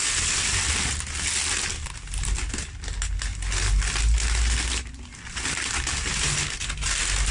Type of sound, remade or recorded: recorded